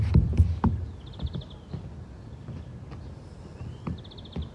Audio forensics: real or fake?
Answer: real